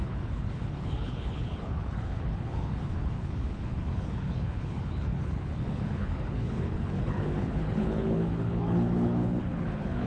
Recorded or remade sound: remade